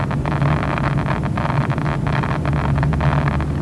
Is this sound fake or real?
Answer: real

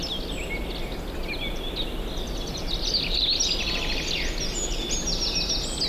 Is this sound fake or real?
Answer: real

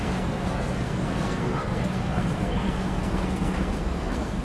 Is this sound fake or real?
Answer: fake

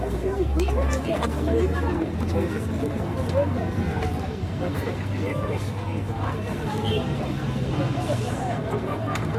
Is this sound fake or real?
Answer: fake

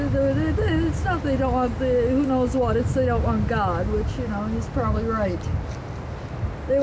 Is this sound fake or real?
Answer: real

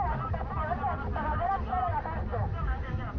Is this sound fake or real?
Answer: real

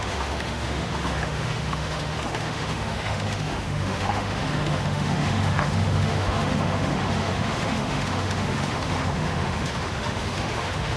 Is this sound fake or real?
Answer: fake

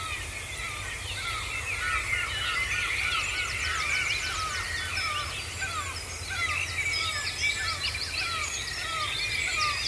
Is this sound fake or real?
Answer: real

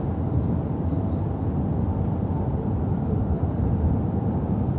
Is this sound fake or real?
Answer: real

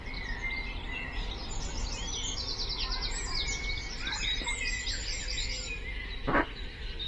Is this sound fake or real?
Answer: real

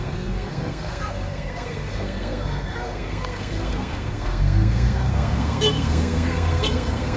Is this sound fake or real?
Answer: fake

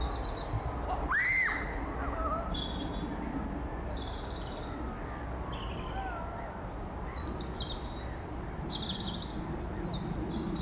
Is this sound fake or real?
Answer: real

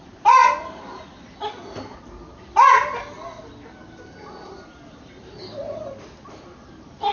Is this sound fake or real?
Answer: real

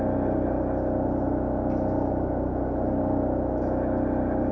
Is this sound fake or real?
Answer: real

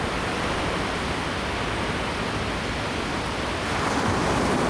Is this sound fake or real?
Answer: real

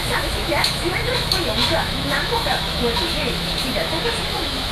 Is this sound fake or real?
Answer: fake